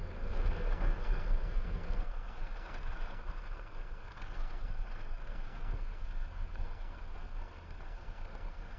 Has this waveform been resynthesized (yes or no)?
yes